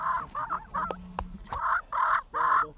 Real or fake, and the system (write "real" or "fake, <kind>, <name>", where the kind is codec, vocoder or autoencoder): real